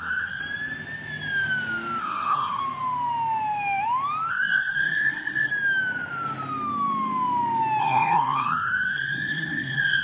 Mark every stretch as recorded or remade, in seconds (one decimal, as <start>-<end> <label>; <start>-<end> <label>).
0.0-0.4 remade; 0.4-2.0 recorded; 2.0-2.6 remade; 2.6-4.3 recorded; 4.3-5.5 remade; 5.5-7.8 recorded; 7.8-10.0 remade